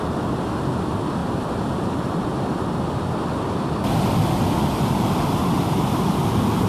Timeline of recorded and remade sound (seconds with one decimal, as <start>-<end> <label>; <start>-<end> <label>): 0.0-1.2 recorded; 1.2-1.9 remade; 1.9-6.7 recorded

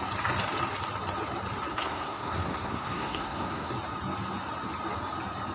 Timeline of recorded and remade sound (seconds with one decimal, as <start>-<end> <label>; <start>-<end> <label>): 0.0-1.7 recorded; 1.7-3.7 remade; 3.7-5.5 recorded

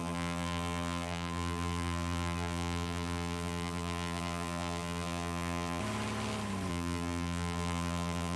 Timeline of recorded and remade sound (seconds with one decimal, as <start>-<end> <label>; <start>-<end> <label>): 0.0-5.8 remade; 5.8-6.7 recorded; 6.7-8.4 remade

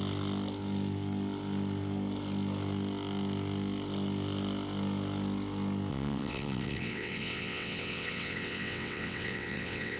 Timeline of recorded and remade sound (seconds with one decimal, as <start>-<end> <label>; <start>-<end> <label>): 0.0-5.9 recorded; 5.9-10.0 remade